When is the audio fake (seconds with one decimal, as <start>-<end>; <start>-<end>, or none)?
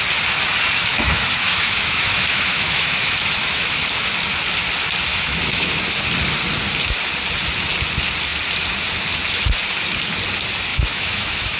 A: 0.9-3.8; 5.1-5.8; 10.7-11.6